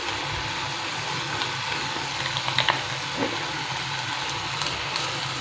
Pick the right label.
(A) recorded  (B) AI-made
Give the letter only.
A